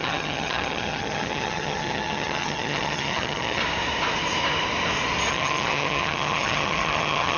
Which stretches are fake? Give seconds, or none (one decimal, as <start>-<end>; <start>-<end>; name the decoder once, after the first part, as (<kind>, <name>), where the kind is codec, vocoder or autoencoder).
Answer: 0.0-3.6 (vocoder, HiFi-GAN); 5.3-7.4